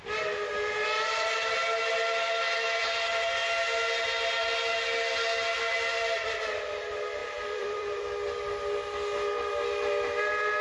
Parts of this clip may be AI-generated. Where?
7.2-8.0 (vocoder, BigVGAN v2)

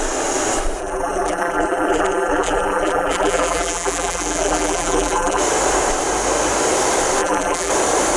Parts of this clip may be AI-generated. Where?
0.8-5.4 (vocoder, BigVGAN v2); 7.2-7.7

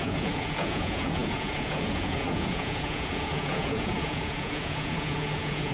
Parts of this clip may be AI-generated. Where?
0.0-5.7 (vocoder, Vocos)